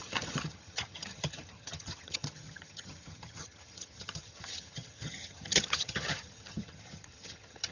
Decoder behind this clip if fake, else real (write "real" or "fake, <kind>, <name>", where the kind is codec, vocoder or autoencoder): fake, vocoder, HiFi-GAN